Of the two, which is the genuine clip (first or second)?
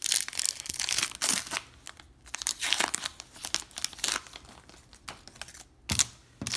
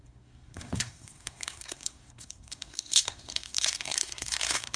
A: first